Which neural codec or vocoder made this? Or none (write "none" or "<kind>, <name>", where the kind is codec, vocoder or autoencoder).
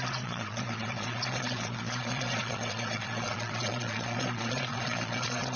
vocoder, Vocos